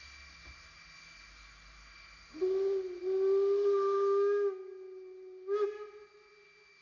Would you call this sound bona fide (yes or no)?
yes